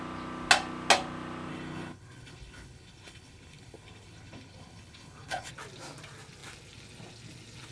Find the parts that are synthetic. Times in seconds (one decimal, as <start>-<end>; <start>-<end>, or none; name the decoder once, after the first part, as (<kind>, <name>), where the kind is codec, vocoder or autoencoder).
1.5-5.5 (codec, HILCodec)